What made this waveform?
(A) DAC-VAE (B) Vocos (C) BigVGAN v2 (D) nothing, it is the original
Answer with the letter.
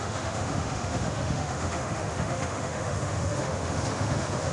A